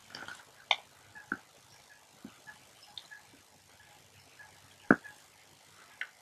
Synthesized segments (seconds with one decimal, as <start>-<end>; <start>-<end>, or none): none